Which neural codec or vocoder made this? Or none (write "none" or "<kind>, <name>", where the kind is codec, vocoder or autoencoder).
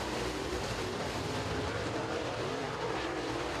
vocoder, BigVGAN v2